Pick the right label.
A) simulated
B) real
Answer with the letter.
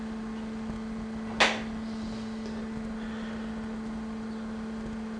B